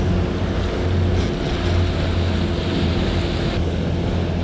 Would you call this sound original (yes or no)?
yes